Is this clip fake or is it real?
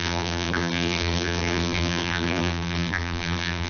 fake